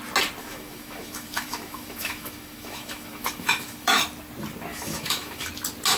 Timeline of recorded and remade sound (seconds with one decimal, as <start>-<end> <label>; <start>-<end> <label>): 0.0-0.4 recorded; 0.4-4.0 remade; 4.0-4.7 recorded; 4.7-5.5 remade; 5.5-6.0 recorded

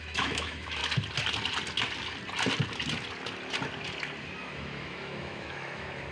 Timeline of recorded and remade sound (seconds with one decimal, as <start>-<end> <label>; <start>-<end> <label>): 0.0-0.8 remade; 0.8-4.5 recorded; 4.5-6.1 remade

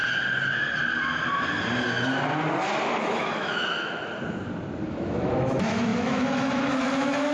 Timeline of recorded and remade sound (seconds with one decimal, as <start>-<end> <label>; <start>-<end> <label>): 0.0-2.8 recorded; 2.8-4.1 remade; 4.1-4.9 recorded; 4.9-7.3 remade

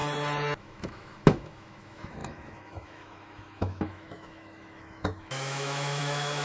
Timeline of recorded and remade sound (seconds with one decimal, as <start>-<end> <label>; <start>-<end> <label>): 0.0-0.6 recorded; 0.6-6.4 remade

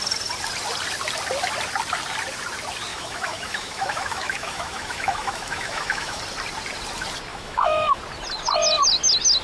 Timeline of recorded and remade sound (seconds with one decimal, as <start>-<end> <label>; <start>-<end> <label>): 0.0-2.9 recorded; 2.9-6.2 remade; 6.2-7.3 recorded; 7.3-8.0 remade; 8.0-9.4 recorded